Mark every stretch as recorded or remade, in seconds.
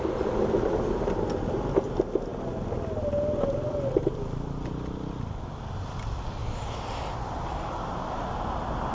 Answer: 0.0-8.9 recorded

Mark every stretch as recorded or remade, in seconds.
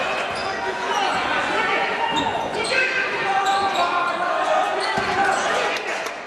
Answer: 0.0-6.3 remade